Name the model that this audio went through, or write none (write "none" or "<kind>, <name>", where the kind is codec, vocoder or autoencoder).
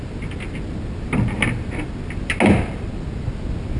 none